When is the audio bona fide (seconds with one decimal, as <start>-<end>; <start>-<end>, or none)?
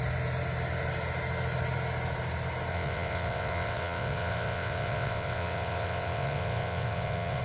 0.0-2.7